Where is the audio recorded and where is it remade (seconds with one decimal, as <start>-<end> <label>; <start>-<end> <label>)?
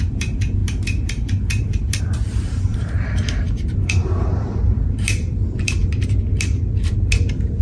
0.0-7.6 remade